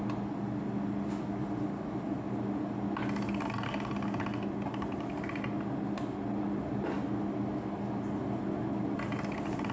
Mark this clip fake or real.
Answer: real